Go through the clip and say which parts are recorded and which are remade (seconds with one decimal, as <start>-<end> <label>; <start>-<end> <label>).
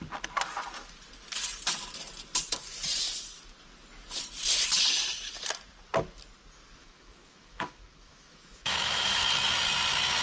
0.0-6.8 recorded; 6.8-9.2 remade; 9.2-10.2 recorded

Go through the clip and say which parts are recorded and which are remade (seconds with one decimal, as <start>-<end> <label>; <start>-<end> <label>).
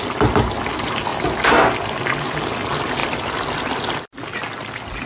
0.0-5.1 recorded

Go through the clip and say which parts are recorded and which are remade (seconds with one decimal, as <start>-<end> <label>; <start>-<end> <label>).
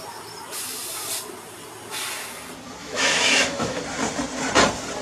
0.0-2.8 recorded; 2.8-3.8 remade; 3.8-5.0 recorded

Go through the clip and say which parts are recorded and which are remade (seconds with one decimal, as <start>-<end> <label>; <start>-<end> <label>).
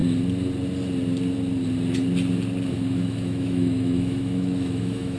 0.0-2.7 recorded; 2.7-5.2 remade